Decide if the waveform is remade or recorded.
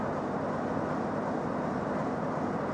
recorded